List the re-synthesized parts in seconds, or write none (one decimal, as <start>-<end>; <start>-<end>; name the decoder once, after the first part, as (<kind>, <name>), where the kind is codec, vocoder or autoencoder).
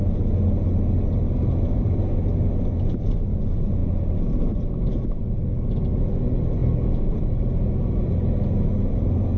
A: none